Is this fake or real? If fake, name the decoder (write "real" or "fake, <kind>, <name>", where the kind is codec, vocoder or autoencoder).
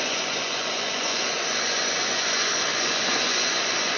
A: fake, vocoder, Vocos